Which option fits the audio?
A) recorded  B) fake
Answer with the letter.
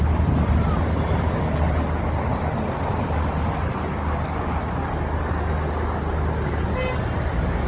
A